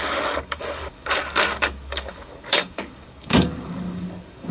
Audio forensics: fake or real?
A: fake